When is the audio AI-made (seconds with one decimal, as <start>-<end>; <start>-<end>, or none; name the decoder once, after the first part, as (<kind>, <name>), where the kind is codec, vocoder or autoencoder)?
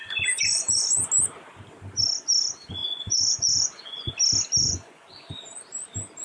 0.0-1.1 (vocoder, Vocos); 2.8-4.1; 4.6-5.3